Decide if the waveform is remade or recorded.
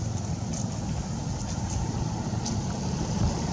recorded